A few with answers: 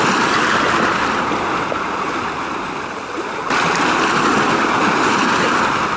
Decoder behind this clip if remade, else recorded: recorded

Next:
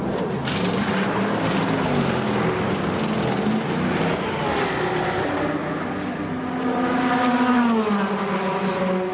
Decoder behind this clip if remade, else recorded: recorded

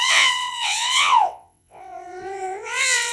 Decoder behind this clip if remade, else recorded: remade, vocoder, WaveNeXt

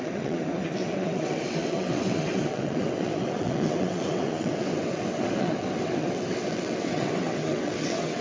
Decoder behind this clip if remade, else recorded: remade, vocoder, WaveNeXt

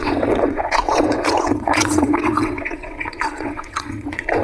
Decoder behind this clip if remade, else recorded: remade, vocoder, WaveNeXt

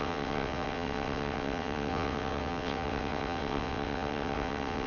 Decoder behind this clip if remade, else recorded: remade, vocoder, WaveNeXt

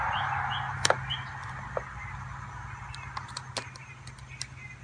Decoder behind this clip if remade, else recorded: recorded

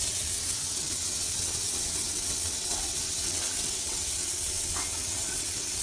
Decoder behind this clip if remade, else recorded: remade, vocoder, WaveNeXt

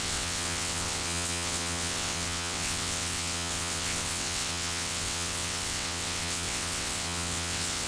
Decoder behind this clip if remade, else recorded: remade, vocoder, WaveNeXt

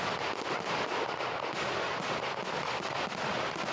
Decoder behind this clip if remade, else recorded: recorded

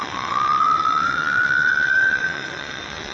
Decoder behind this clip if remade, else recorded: remade, vocoder, WaveNeXt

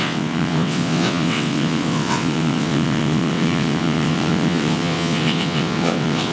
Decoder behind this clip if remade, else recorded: remade, vocoder, WaveNeXt